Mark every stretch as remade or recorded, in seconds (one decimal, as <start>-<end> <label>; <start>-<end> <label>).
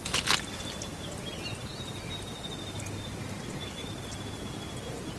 0.0-5.2 recorded